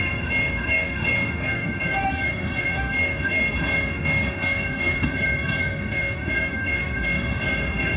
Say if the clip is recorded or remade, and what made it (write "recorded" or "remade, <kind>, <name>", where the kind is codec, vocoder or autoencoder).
remade, autoencoder, DAC-VAE